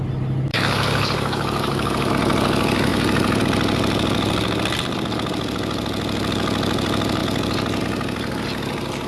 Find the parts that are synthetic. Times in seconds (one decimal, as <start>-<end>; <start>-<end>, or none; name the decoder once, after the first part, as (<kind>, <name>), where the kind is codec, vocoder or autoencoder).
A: 0.5-2.1 (codec, DAC)